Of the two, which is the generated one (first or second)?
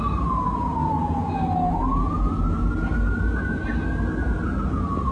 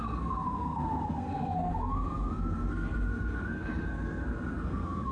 second